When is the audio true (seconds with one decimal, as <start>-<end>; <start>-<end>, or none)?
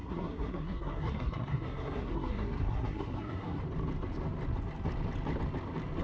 3.6-6.0